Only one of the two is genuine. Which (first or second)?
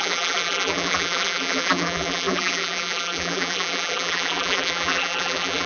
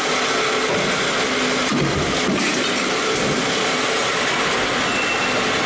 second